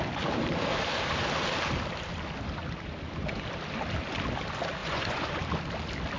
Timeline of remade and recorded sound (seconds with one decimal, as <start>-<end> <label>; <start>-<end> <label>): 0.0-4.8 recorded; 4.8-5.3 remade; 5.3-6.2 recorded